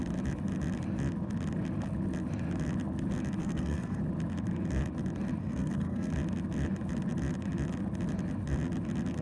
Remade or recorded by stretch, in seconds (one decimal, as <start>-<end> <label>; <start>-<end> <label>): 0.0-3.4 recorded; 3.4-4.0 remade; 4.0-5.4 recorded; 5.4-6.1 remade; 6.1-9.2 recorded

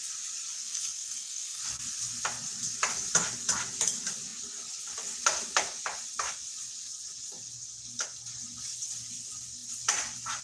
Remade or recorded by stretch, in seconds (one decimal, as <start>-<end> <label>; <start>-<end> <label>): 0.0-0.6 recorded; 0.6-1.6 remade; 1.6-10.4 recorded

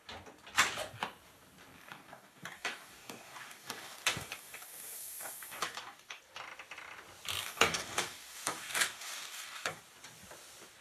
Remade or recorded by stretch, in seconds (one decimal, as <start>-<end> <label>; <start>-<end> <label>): 0.0-1.8 recorded; 1.8-6.2 remade; 6.2-7.4 recorded; 7.4-9.8 remade; 9.8-10.8 recorded

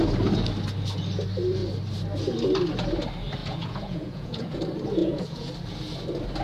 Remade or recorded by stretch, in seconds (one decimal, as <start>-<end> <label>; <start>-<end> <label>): 0.0-3.4 recorded; 3.4-4.6 remade; 4.6-5.0 recorded; 5.0-5.5 remade; 5.5-6.4 recorded

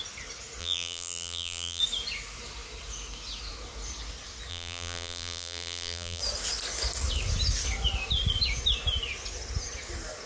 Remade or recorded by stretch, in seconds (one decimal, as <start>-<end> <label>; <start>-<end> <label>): 0.0-0.6 recorded; 0.6-1.8 remade; 1.8-4.5 recorded; 4.5-6.2 remade; 6.2-10.3 recorded

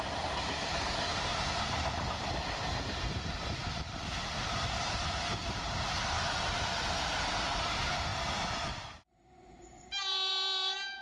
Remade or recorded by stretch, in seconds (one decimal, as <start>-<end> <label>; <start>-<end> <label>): 0.0-11.0 remade

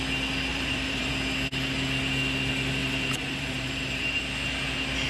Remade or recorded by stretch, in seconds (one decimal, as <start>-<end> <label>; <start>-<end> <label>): 0.0-0.5 recorded; 0.5-1.1 remade; 1.1-2.8 recorded; 2.8-4.2 remade; 4.2-5.1 recorded

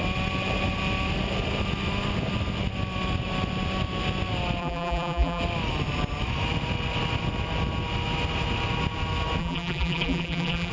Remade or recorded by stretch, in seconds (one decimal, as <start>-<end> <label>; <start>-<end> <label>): 0.0-4.6 recorded; 4.6-5.4 remade; 5.4-9.4 recorded; 9.4-10.7 remade